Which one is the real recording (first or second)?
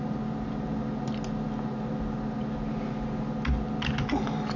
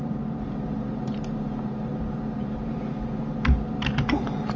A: first